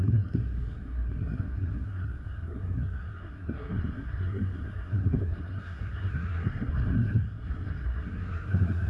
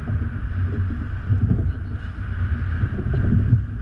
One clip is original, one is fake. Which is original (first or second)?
second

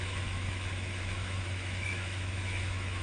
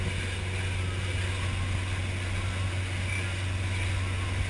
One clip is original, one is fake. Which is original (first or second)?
second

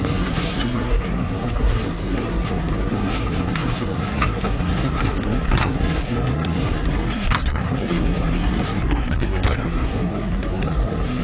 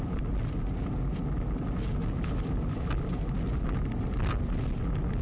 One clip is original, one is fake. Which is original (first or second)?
second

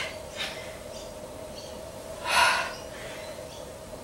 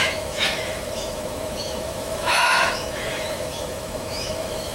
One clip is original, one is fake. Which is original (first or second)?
first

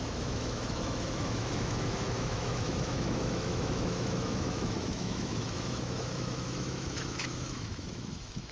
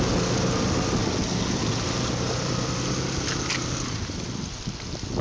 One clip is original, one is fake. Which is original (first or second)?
second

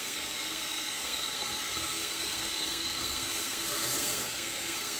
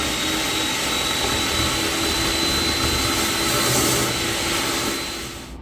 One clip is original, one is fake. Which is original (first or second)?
second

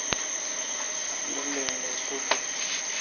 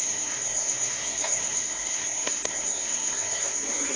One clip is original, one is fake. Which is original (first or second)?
first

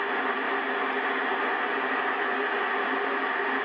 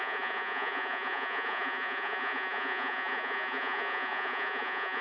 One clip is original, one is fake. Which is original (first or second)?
first